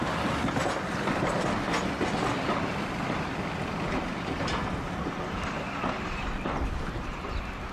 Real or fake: real